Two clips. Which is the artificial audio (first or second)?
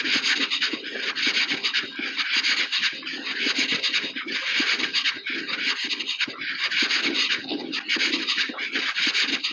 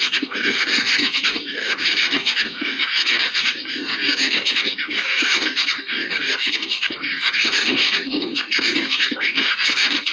second